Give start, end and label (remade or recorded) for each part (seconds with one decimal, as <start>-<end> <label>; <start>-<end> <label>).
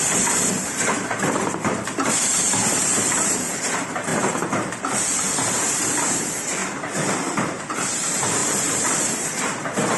0.0-10.0 remade